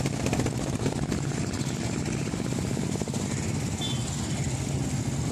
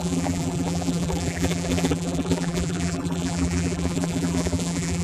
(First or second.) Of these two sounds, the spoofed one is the second